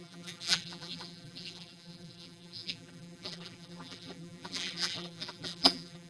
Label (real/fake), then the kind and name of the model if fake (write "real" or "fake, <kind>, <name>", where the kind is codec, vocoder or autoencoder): fake, vocoder, BigVGAN v2